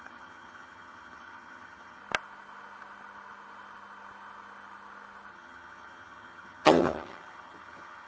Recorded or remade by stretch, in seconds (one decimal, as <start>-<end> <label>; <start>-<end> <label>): 0.0-2.0 remade; 2.0-5.3 recorded; 5.3-8.1 remade